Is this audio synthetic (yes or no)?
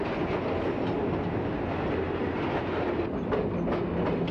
no